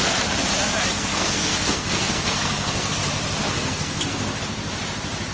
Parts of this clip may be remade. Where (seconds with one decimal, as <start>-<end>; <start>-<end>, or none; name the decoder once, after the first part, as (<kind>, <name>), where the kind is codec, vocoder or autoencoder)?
0.9-2.9 (codec, SNAC); 3.4-4.4